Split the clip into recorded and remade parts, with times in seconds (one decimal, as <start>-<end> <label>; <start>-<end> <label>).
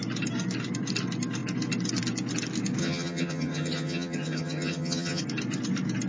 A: 0.0-2.8 recorded; 2.8-5.2 remade; 5.2-6.1 recorded